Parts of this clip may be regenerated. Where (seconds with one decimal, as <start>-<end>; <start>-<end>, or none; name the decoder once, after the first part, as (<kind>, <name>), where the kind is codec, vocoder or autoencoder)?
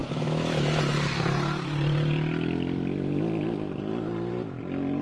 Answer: 0.0-0.8 (autoencoder, DAC-VAE)